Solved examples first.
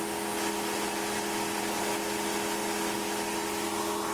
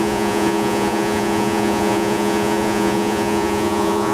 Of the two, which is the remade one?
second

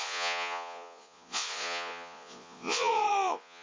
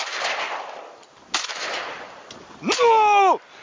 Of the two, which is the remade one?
first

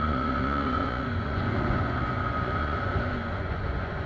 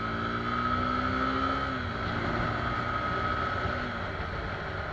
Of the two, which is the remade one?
first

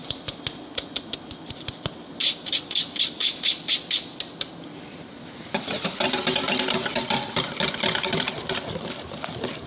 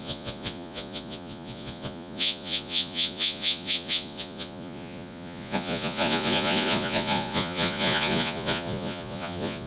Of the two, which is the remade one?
second